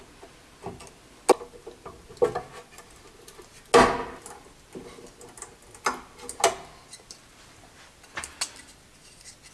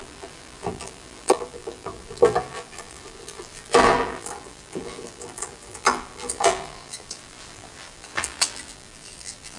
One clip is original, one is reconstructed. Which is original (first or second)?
first